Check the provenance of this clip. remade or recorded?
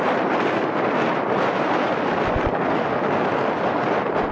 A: recorded